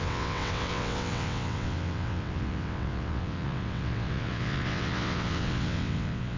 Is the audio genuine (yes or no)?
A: no